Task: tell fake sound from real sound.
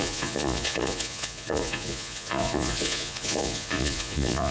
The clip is fake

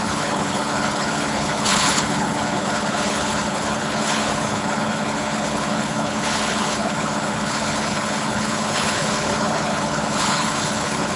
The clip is fake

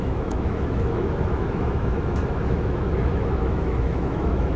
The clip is fake